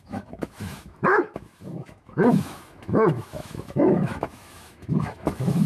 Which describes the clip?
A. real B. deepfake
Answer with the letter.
B